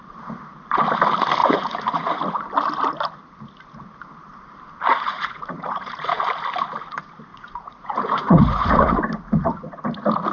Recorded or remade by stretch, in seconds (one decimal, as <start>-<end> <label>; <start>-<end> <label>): 0.0-1.4 recorded; 1.4-2.3 remade; 2.3-4.9 recorded; 4.9-6.2 remade; 6.2-7.3 recorded; 7.3-9.0 remade; 9.0-10.3 recorded